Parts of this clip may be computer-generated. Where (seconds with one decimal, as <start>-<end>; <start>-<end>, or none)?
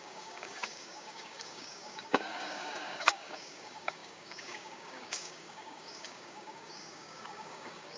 0.0-8.0